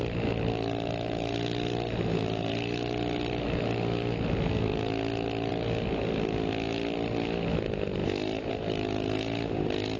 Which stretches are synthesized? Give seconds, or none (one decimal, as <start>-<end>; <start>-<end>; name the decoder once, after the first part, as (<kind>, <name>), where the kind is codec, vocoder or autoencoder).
none